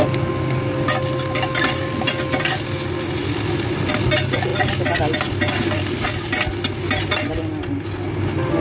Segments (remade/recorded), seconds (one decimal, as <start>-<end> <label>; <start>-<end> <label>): 0.0-8.6 recorded